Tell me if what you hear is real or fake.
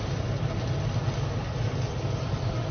real